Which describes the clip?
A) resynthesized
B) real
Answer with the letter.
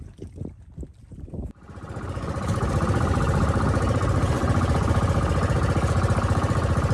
B